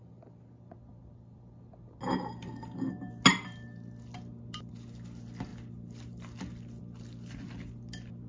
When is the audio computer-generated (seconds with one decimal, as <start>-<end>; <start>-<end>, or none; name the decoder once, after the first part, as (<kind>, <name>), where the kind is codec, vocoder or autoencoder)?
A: none